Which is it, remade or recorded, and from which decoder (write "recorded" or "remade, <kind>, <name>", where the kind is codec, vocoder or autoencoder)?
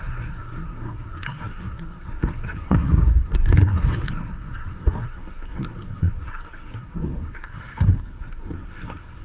remade, codec, SNAC